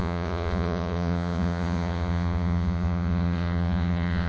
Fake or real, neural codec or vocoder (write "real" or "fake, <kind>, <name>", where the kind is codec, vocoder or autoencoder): fake, vocoder, Vocos